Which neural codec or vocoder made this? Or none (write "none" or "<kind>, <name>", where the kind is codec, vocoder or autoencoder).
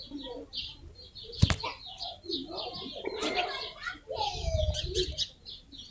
none